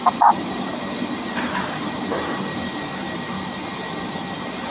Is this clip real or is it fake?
fake